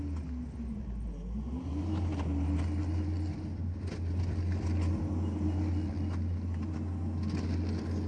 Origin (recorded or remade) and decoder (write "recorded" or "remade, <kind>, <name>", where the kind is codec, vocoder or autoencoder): recorded